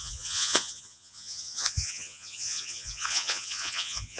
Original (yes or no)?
no